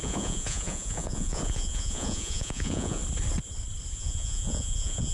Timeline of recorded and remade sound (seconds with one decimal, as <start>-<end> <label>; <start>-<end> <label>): 0.0-3.0 remade; 3.0-3.9 recorded; 3.9-5.1 remade